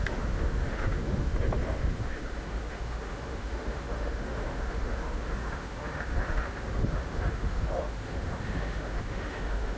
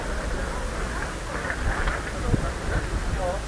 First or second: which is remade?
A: first